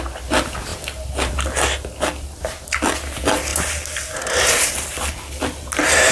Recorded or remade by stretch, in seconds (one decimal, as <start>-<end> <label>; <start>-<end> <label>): 0.0-6.1 recorded